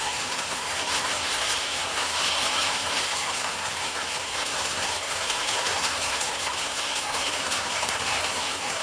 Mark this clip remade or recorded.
remade